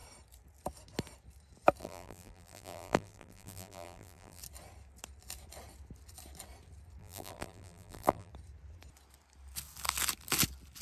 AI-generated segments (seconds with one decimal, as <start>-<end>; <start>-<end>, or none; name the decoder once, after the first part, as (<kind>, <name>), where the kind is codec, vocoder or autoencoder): 1.8-4.4 (vocoder, BigVGAN v2); 7.0-8.3